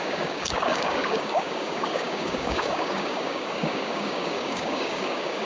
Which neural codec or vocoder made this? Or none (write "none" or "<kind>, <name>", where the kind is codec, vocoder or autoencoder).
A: codec, DAC